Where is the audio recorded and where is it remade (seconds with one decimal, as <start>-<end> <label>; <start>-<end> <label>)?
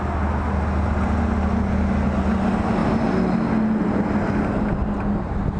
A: 0.0-5.6 recorded